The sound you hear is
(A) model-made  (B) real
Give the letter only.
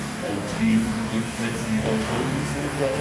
A